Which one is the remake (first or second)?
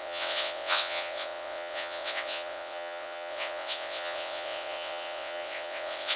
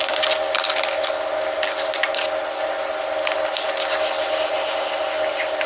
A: first